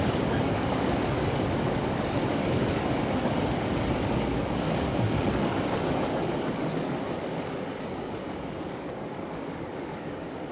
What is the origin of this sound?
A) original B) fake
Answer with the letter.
B